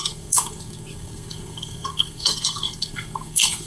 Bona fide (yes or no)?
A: no